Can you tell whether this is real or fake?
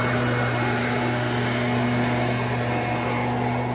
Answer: real